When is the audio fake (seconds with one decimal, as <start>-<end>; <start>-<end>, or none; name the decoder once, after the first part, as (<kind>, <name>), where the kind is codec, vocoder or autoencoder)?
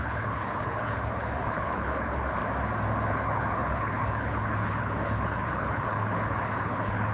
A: 0.0-2.4 (codec, HILCodec); 3.1-7.1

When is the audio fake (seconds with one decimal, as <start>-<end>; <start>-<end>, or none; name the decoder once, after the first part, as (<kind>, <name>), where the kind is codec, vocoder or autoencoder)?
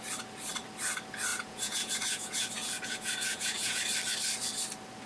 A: 1.3-3.8 (vocoder, Vocos)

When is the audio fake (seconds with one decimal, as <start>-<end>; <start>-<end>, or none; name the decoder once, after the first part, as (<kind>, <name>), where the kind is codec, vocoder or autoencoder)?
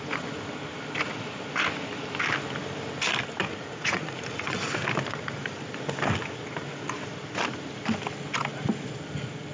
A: 3.5-4.6 (vocoder, Vocos)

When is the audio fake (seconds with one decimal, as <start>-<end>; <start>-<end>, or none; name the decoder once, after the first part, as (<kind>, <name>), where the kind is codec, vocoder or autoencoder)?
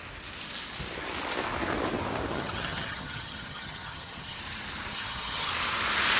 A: 2.3-4.4 (vocoder, HiFi-GAN); 4.9-5.5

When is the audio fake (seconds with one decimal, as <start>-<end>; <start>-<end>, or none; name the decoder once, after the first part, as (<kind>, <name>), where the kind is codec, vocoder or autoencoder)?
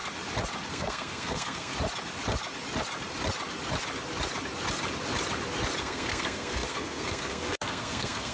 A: 0.7-1.7 (codec, SNAC); 5.8-8.3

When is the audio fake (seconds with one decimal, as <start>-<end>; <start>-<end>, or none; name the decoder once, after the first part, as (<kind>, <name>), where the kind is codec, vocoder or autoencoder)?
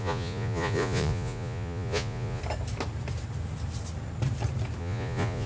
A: 0.0-2.4 (vocoder, Vocos); 4.8-5.5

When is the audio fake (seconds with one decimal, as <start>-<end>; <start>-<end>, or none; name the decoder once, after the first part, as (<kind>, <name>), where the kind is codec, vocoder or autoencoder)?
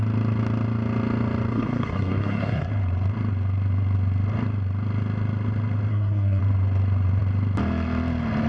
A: 1.5-2.7 (codec, SNAC); 5.9-6.4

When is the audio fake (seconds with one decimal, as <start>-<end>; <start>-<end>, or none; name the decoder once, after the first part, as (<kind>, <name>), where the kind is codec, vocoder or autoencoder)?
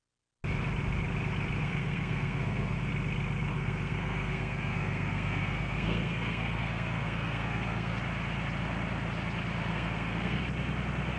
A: 1.6-2.9 (codec, SNAC); 3.5-8.0; 9.7-10.4